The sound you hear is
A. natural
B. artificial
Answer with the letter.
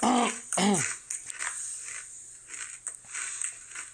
A